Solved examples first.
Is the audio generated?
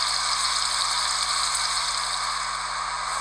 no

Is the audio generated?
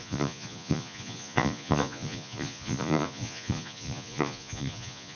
yes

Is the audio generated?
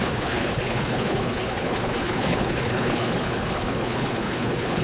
yes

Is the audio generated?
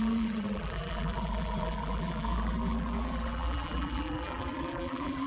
yes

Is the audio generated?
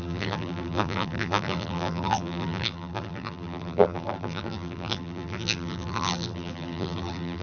yes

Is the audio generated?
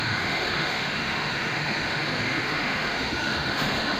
yes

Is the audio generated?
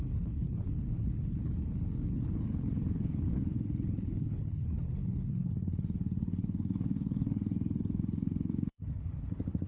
yes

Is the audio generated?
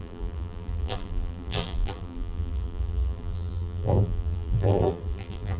yes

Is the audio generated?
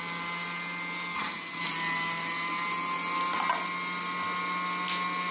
no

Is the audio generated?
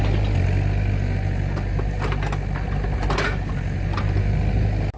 no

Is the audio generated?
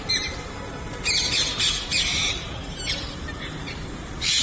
yes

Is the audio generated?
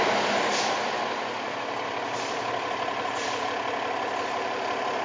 no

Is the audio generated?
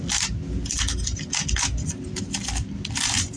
no